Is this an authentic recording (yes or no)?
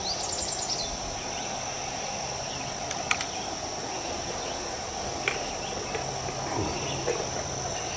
yes